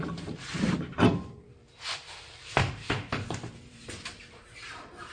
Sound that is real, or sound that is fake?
fake